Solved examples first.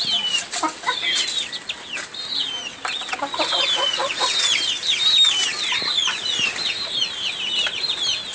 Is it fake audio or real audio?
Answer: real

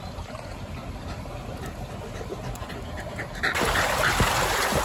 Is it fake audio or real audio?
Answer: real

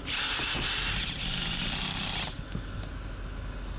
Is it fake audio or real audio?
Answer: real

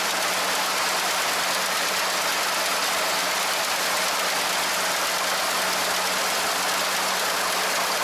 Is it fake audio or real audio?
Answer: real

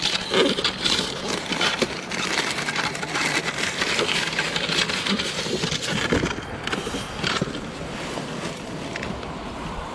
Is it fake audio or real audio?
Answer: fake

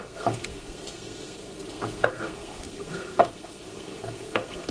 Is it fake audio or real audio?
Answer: fake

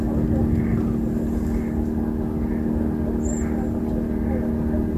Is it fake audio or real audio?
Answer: real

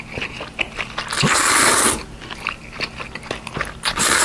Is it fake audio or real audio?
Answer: real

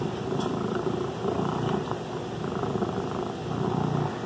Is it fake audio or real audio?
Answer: real